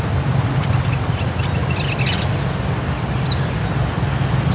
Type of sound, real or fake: real